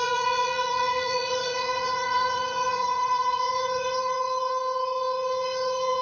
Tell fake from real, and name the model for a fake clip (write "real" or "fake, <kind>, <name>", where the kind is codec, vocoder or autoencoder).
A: fake, vocoder, Vocos